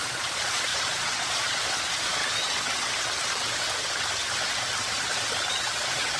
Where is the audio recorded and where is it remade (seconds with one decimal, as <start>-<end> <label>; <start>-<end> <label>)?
0.0-2.2 remade; 2.2-5.5 recorded; 5.5-6.2 remade